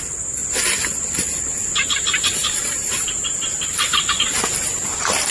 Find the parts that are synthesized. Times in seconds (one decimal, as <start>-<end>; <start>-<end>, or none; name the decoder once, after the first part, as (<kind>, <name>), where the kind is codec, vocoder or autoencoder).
2.4-3.6 (vocoder, BigVGAN v2)